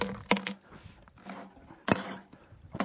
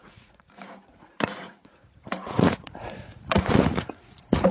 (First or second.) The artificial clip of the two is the second